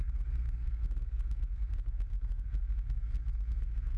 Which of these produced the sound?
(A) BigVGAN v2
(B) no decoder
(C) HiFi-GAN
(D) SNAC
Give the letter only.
D